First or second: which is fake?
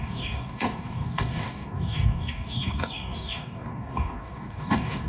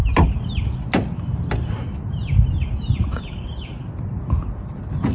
first